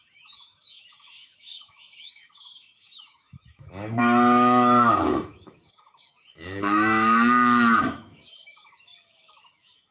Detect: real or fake fake